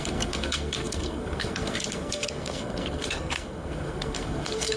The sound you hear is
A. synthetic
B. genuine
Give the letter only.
A